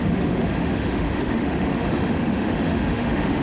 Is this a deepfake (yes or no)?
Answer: yes